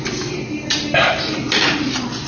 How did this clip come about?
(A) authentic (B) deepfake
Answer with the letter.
A